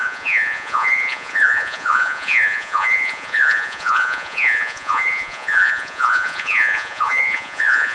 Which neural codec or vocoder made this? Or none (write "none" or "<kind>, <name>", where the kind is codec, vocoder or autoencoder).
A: vocoder, Vocos